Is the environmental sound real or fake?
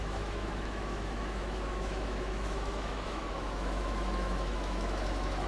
fake